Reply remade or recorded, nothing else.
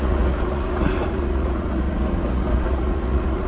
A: remade